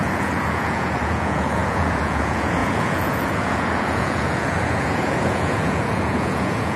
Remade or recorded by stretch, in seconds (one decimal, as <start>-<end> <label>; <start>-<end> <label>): 0.0-6.8 remade